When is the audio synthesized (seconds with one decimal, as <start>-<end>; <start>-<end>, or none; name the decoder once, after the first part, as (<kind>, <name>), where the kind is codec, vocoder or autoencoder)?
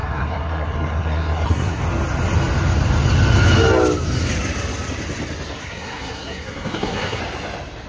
0.0-1.8 (codec, SNAC); 5.6-7.2